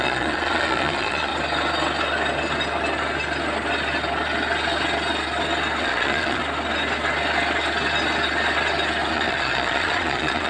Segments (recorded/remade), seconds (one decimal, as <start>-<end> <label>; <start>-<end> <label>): 0.0-1.3 remade; 1.3-5.8 recorded; 5.8-6.4 remade; 6.4-9.1 recorded; 9.1-10.5 remade